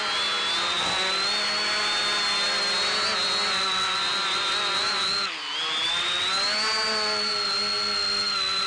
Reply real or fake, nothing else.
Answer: real